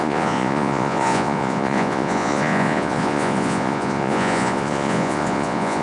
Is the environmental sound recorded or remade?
remade